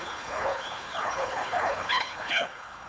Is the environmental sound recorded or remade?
remade